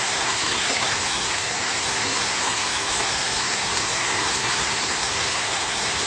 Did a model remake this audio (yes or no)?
yes